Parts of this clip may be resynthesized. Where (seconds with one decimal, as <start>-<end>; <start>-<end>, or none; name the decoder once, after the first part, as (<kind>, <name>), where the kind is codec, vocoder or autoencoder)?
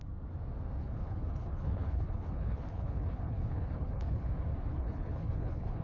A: 0.8-4.3 (codec, HILCodec); 4.7-5.8